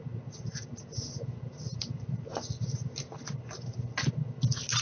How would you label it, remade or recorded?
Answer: recorded